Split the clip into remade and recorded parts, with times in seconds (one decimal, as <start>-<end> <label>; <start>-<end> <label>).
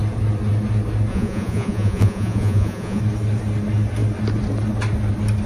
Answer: 0.0-1.1 recorded; 1.1-3.0 remade; 3.0-5.5 recorded